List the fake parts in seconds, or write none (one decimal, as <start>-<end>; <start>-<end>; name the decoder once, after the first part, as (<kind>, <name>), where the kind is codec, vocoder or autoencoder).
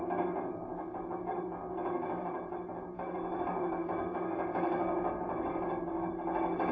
0.0-6.7 (codec, DAC)